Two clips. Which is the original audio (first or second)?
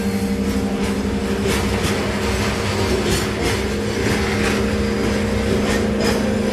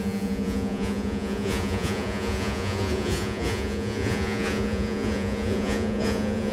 first